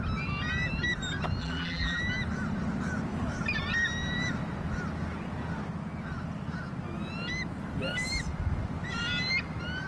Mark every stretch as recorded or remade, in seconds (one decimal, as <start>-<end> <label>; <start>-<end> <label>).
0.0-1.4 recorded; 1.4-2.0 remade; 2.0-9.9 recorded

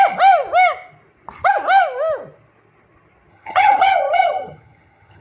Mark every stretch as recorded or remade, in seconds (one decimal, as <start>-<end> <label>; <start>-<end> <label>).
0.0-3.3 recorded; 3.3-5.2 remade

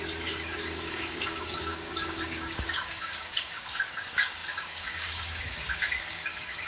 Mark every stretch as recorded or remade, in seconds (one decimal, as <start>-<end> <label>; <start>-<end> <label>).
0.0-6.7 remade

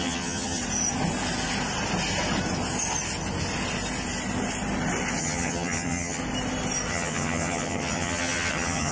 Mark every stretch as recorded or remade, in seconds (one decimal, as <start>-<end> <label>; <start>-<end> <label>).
0.0-0.6 remade; 0.6-5.2 recorded; 5.2-6.2 remade; 6.2-6.9 recorded; 6.9-8.9 remade